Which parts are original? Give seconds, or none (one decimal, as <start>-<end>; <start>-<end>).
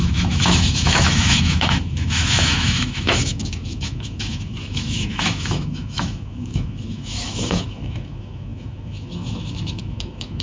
none